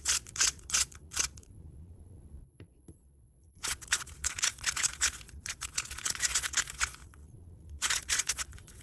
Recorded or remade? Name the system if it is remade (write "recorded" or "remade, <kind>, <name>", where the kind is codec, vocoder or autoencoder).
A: remade, vocoder, Vocos